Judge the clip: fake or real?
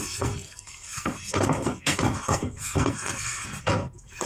fake